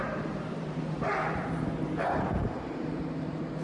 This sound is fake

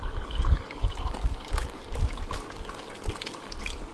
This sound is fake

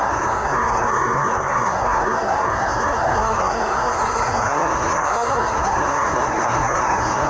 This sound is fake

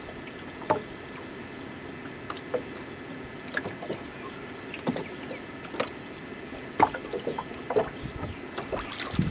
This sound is real